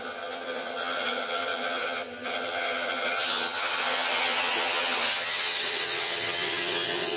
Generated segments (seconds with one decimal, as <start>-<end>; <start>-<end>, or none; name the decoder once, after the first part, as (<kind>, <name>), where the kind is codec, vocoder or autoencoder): 0.0-7.2 (vocoder, HiFi-GAN)